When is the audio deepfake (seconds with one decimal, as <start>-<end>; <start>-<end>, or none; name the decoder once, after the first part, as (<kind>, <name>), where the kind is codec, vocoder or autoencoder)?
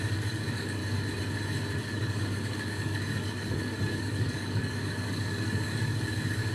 0.0-0.8 (codec, DAC); 1.8-6.5